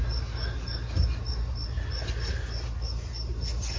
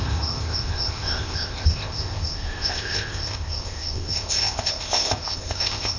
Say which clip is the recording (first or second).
first